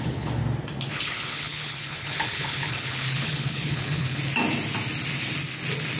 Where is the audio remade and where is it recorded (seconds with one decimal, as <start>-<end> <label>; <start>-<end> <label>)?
0.0-0.4 remade; 0.4-0.9 recorded; 0.9-4.2 remade; 4.2-6.0 recorded